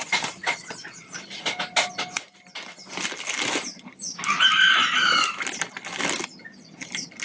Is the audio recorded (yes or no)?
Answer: yes